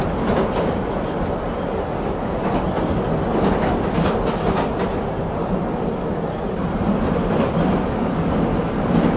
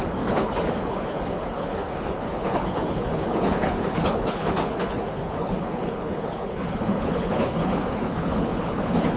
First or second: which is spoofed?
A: second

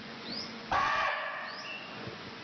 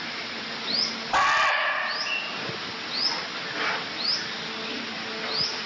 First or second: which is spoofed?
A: first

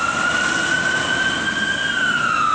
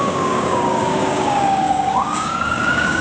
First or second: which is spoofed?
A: second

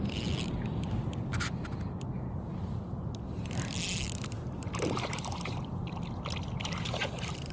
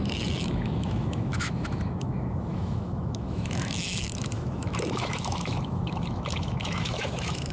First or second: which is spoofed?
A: second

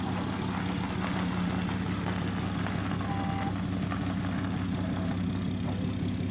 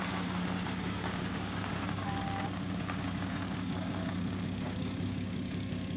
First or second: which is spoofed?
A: second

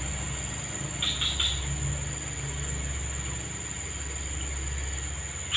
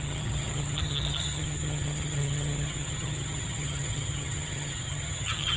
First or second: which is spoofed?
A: second